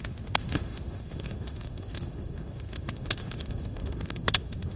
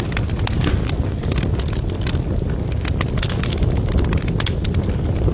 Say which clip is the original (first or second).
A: second